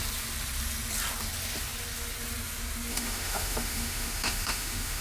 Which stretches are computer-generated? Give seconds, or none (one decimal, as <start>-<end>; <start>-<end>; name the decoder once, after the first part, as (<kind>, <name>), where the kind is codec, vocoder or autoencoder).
2.9-5.0 (autoencoder, DAC-VAE)